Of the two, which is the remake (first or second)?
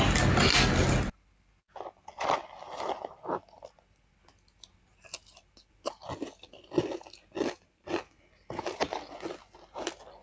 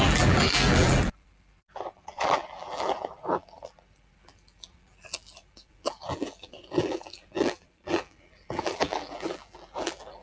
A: second